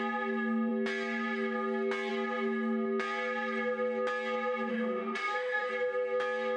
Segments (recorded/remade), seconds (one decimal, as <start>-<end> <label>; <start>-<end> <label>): 0.0-4.7 recorded; 4.7-5.7 remade; 5.7-6.6 recorded